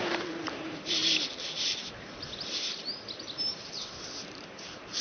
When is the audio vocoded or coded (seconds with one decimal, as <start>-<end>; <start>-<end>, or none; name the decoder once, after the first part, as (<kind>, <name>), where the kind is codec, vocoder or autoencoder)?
0.0-1.0 (vocoder, BigVGAN v2); 3.9-5.0